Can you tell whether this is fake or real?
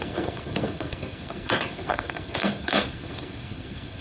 fake